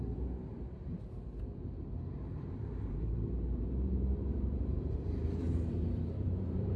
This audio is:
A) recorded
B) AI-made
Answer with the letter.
B